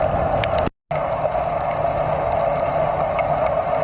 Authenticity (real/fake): real